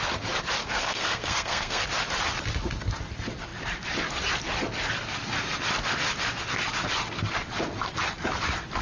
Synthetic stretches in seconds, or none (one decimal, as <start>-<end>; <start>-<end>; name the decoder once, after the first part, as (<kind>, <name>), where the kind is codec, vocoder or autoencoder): 0.6-1.8 (codec, SNAC)